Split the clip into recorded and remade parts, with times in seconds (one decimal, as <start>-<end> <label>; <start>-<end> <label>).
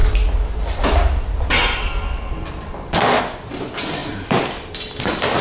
0.0-3.2 remade; 3.2-4.0 recorded; 4.0-5.0 remade; 5.0-5.4 recorded